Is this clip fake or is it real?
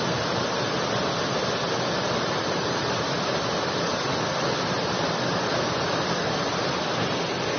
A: real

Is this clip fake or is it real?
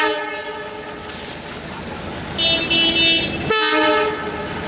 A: real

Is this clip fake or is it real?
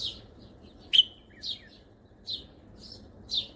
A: real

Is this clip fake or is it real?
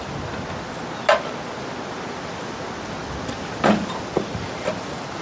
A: real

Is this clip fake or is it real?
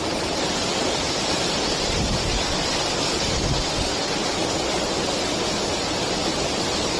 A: real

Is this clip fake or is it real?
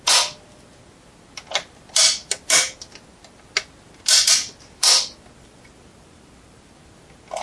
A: real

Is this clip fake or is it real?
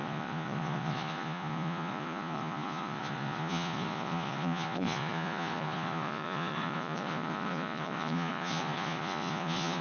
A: fake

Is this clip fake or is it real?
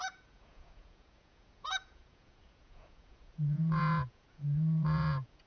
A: fake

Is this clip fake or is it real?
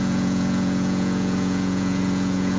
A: fake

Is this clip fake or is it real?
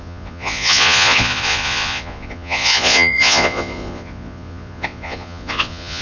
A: fake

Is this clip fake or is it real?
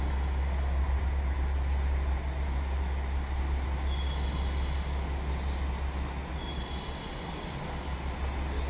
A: real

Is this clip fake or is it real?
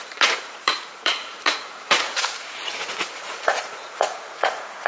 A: fake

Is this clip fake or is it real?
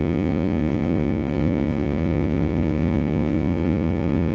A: fake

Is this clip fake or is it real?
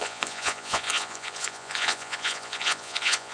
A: fake